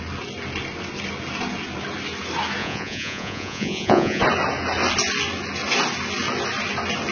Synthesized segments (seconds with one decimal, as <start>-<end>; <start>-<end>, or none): 2.6-4.2